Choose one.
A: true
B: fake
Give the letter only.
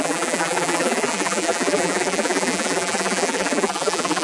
B